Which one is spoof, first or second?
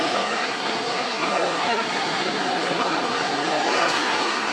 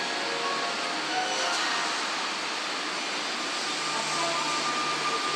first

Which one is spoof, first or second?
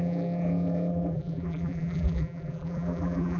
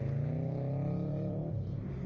first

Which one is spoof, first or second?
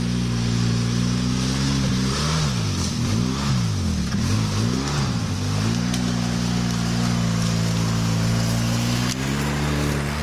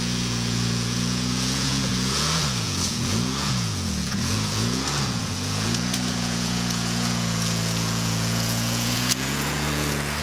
second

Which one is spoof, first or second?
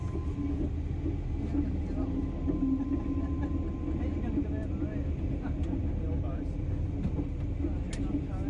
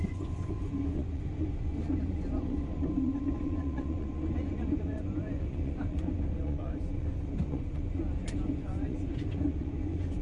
second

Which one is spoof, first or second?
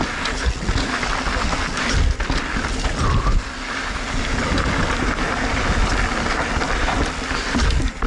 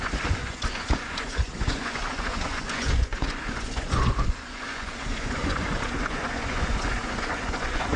second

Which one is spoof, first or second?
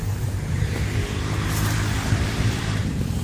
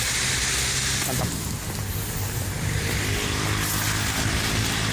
first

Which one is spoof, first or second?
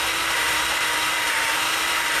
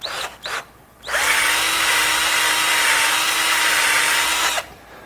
first